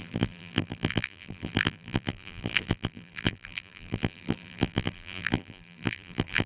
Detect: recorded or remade remade